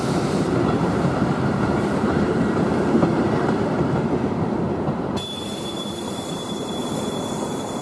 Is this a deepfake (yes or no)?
yes